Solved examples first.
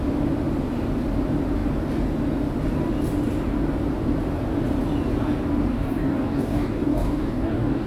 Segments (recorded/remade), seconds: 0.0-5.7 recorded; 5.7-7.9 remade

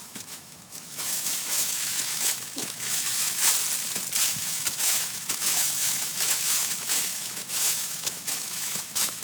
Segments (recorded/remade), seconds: 0.0-3.4 remade; 3.4-4.2 recorded; 4.2-9.2 remade